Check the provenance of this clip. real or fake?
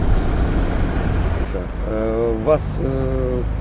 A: real